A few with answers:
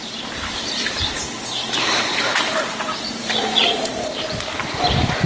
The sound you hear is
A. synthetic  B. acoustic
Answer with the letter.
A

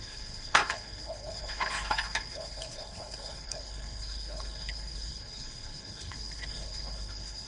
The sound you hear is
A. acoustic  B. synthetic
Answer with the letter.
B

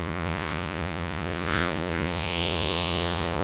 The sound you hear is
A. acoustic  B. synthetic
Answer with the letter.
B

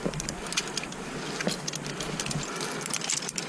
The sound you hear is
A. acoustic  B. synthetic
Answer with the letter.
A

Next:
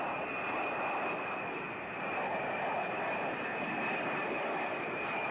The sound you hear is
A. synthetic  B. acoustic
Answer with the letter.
B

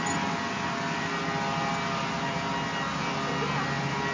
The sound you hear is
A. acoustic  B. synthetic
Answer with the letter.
A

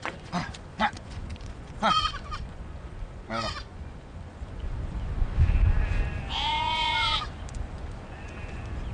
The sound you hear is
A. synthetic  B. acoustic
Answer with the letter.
A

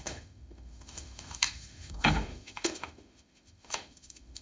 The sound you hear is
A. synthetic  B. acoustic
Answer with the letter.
A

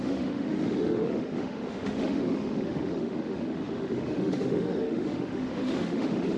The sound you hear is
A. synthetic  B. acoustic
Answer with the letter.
A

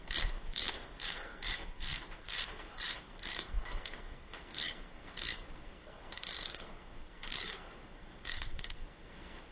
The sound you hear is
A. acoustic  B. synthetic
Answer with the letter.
B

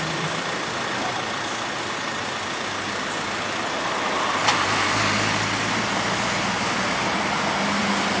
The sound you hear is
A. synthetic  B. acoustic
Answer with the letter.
B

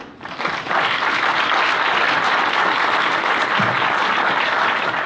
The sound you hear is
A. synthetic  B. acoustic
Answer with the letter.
B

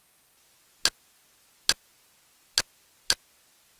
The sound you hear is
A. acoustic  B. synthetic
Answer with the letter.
A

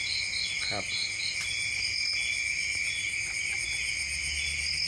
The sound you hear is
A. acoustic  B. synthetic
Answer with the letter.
A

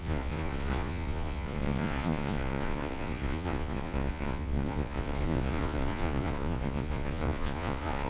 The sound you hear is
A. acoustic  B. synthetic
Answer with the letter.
B